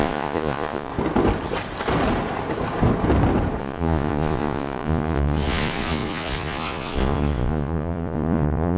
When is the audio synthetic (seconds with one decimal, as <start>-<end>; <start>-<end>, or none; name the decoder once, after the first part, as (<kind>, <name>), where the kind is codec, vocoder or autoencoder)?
0.0-0.9 (vocoder, Vocos); 3.6-8.8